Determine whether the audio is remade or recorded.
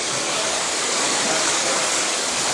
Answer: remade